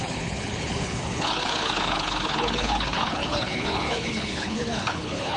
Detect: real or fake fake